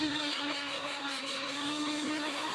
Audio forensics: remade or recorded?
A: remade